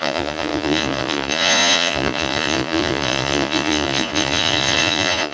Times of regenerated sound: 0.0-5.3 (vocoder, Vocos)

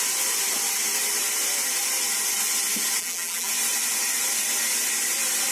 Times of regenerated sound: 3.0-3.5 (vocoder, BigVGAN v2)

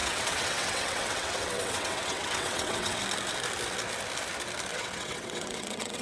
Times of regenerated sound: 0.0-3.0 (vocoder, WaveNeXt); 4.7-6.0

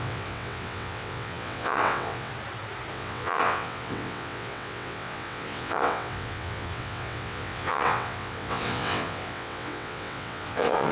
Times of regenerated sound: 0.0-2.3 (vocoder, WaveNeXt); 2.9-10.9

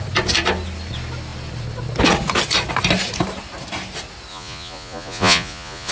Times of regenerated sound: 4.3-5.9 (vocoder, Vocos)

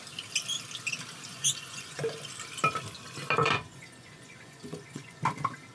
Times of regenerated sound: 1.3-2.0 (vocoder, Vocos); 3.4-5.2

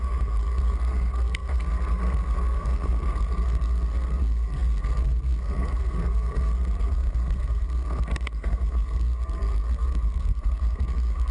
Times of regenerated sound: 0.0-11.3 (codec, SNAC)